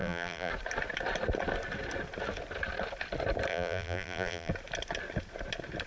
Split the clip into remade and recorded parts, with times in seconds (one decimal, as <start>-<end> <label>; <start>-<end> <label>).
0.0-0.5 remade; 0.5-3.5 recorded; 3.5-4.5 remade; 4.5-5.9 recorded

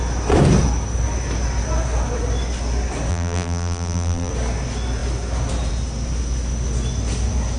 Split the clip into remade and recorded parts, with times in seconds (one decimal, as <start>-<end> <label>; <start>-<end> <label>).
0.0-3.1 recorded; 3.1-4.3 remade; 4.3-7.6 recorded

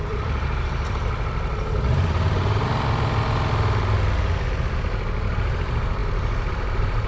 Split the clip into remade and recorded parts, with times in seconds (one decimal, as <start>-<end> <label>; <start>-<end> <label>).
0.0-1.0 remade; 1.0-1.9 recorded; 1.9-2.7 remade; 2.7-5.3 recorded; 5.3-7.1 remade

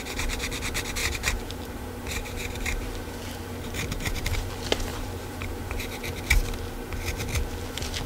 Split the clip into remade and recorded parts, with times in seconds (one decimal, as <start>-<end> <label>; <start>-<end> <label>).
0.0-1.0 recorded; 1.0-4.5 remade; 4.5-4.9 recorded; 4.9-6.1 remade; 6.1-8.1 recorded

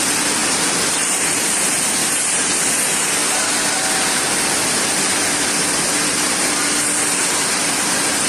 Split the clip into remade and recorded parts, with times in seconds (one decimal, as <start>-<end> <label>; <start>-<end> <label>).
0.0-0.4 recorded; 0.4-1.4 remade; 1.4-2.0 recorded; 2.0-2.6 remade; 2.6-8.3 recorded

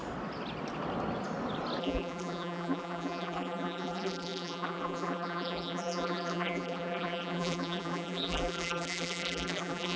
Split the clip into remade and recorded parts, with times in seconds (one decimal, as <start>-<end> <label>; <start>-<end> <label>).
0.0-1.8 recorded; 1.8-10.0 remade

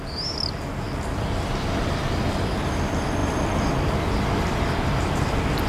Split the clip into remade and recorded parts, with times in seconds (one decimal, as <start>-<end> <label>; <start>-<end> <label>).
0.0-3.2 recorded; 3.2-3.7 remade; 3.7-5.7 recorded

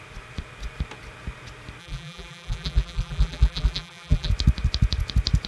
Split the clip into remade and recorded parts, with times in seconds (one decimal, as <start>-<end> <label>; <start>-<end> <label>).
0.0-1.8 recorded; 1.8-4.3 remade; 4.3-5.5 recorded